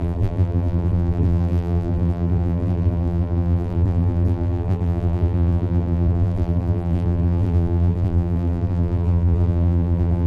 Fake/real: fake